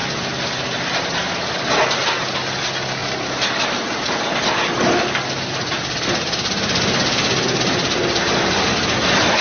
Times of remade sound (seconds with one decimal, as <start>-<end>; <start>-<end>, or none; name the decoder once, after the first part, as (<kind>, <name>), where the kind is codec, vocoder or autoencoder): none